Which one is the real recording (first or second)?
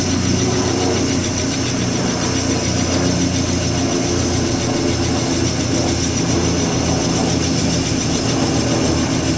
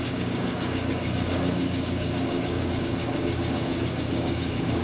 first